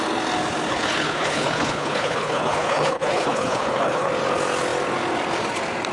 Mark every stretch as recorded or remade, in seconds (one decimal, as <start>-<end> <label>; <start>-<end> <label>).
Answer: 0.0-0.7 recorded; 0.7-4.1 remade; 4.1-5.9 recorded